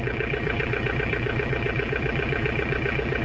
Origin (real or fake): fake